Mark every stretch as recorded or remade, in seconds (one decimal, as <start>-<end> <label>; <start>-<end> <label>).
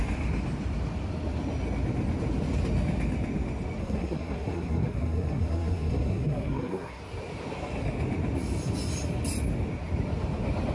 0.0-3.8 recorded; 3.8-7.0 remade; 7.0-10.7 recorded